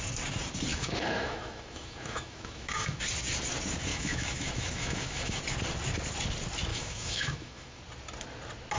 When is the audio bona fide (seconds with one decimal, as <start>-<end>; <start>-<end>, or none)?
0.0-0.7; 3.0-3.9; 5.4-6.7; 7.8-8.8